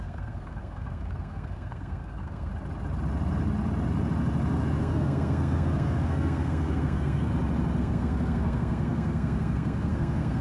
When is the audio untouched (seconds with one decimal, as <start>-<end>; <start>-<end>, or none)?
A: 2.5-4.8; 7.3-7.8